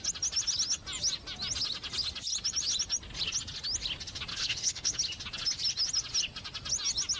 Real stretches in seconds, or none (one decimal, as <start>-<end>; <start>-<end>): 0.0-4.3; 5.0-7.2